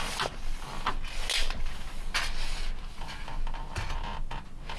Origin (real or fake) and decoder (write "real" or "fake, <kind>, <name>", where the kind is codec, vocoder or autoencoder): real